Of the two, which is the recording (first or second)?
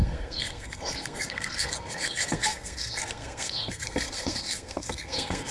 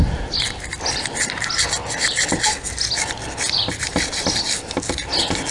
second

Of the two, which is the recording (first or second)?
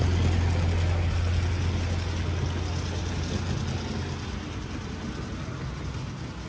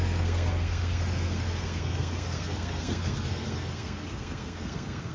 first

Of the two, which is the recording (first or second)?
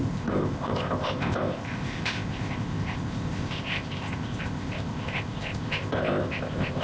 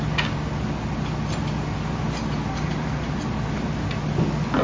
second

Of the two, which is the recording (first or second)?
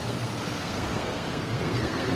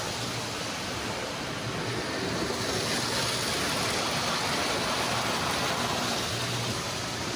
second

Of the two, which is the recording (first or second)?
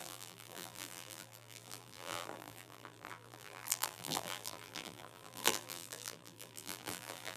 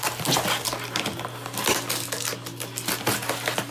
second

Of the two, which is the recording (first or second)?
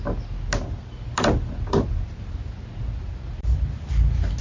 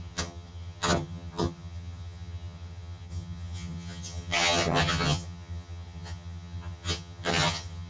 first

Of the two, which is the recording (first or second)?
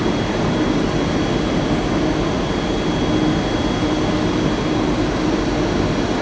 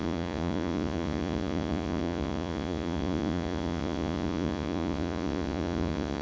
first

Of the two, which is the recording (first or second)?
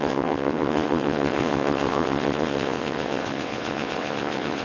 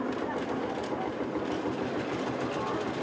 second